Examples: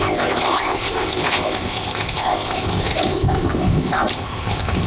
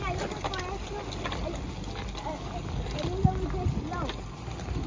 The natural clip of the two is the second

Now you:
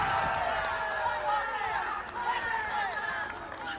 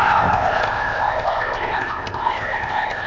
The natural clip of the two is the first